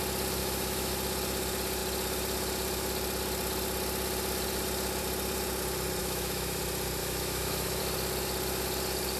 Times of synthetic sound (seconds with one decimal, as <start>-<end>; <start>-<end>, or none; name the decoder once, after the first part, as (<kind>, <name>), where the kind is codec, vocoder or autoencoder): 0.4-0.9 (autoencoder, DAC-VAE); 6.0-6.6; 7.0-7.8